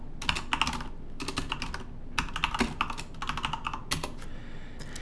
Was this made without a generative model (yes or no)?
yes